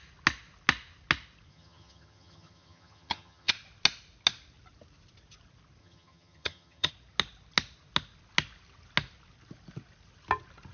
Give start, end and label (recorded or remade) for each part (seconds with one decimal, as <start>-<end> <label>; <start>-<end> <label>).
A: 0.0-1.5 recorded; 1.5-3.5 remade; 3.5-5.8 recorded; 5.8-6.9 remade; 6.9-10.7 recorded